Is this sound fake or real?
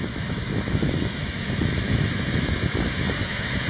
fake